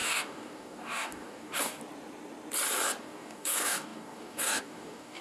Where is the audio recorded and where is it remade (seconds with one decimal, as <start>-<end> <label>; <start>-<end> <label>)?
0.0-1.8 remade; 1.8-3.0 recorded; 3.0-5.2 remade